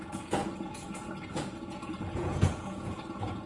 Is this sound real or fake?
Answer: fake